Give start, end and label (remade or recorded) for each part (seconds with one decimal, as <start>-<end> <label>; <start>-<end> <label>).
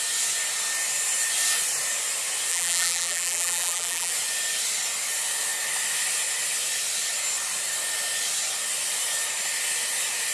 0.0-2.5 recorded; 2.5-4.1 remade; 4.1-10.3 recorded